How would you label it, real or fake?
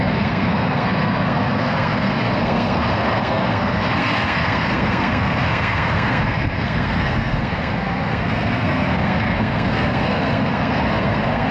fake